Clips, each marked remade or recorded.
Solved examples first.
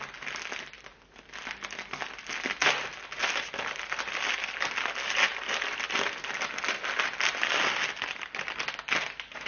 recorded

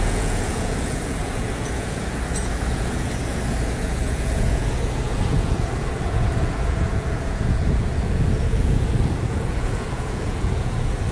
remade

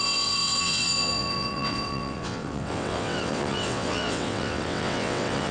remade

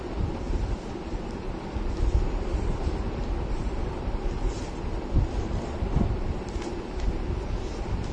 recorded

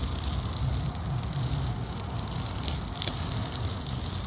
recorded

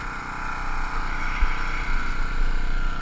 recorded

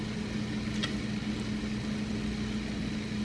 recorded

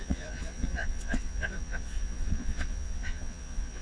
remade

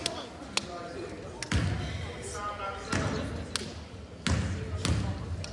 recorded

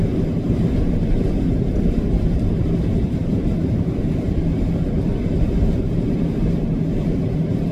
remade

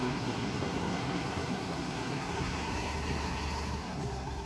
remade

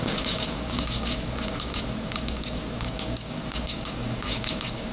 remade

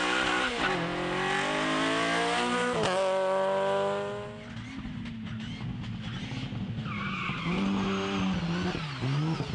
recorded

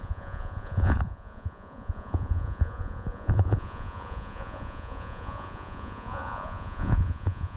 remade